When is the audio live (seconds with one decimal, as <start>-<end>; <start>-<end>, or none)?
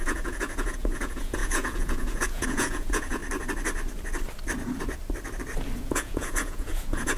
3.2-5.8